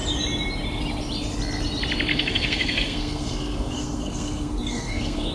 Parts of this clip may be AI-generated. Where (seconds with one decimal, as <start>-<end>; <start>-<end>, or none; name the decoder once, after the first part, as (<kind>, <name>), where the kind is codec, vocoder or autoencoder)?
2.1-5.3 (codec, SNAC)